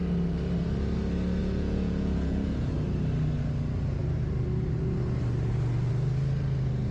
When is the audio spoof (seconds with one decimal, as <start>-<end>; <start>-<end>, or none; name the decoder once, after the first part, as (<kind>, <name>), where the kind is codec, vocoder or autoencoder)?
1.4-2.7 (vocoder, Vocos)